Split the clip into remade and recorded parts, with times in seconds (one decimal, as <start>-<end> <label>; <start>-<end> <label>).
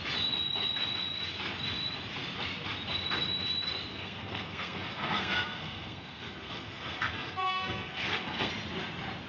0.0-3.9 recorded; 3.9-8.5 remade; 8.5-9.3 recorded